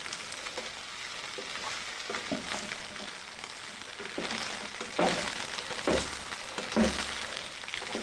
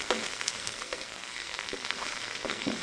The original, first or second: first